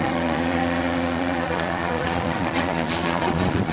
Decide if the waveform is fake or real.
fake